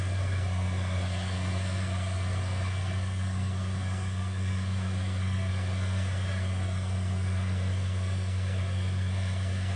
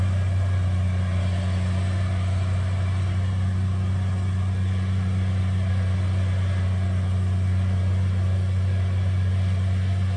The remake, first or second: first